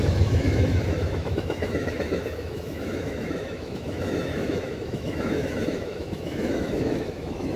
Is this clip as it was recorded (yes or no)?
no